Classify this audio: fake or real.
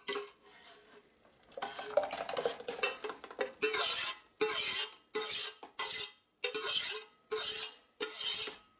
real